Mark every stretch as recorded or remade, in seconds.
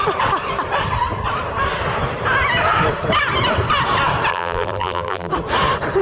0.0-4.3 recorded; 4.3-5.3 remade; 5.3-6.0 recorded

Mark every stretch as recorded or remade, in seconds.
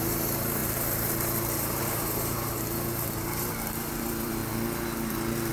0.0-4.4 remade; 4.4-5.5 recorded